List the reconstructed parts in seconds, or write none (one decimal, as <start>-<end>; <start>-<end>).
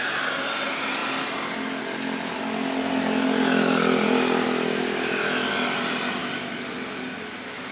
none